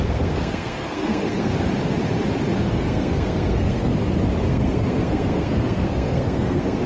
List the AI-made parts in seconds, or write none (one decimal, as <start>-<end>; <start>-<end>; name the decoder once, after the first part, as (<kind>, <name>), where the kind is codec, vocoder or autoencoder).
0.0-1.5 (codec, SNAC); 2.6-3.9; 4.5-6.9